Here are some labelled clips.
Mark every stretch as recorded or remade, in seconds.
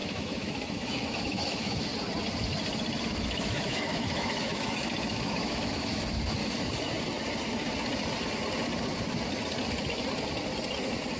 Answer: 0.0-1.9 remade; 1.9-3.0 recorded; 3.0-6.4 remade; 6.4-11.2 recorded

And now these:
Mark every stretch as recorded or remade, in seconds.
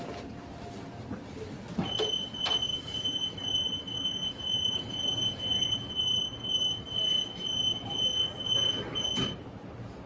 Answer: 0.0-2.7 recorded; 2.7-6.7 remade; 6.7-10.1 recorded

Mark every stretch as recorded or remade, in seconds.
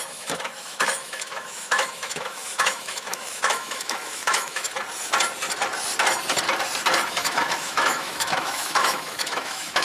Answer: 0.0-4.7 remade; 4.7-7.1 recorded; 7.1-9.8 remade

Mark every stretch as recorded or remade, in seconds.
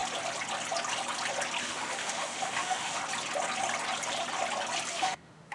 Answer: 0.0-1.6 recorded; 1.6-3.0 remade; 3.0-4.9 recorded; 4.9-5.5 remade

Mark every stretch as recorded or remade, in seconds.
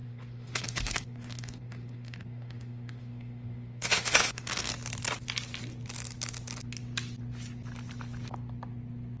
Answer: 0.0-4.7 remade; 4.7-9.2 recorded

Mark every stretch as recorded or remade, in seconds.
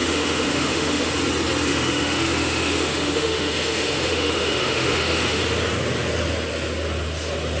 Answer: 0.0-1.1 remade; 1.1-1.7 recorded; 1.7-5.4 remade; 5.4-7.6 recorded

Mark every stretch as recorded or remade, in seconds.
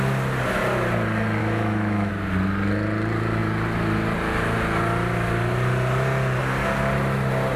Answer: 0.0-1.4 recorded; 1.4-2.1 remade; 2.1-7.6 recorded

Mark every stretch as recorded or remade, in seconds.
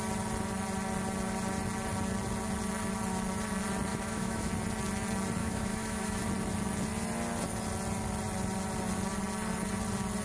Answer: 0.0-3.9 recorded; 3.9-4.5 remade; 4.5-5.4 recorded; 5.4-6.2 remade; 6.2-10.2 recorded